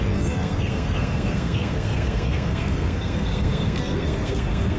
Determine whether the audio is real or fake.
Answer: fake